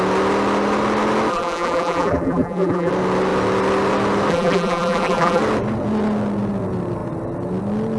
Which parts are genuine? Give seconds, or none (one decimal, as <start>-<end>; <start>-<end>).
0.0-1.3; 2.9-4.3; 5.4-8.0